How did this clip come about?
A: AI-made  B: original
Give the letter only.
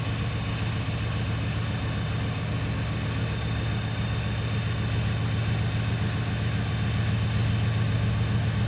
B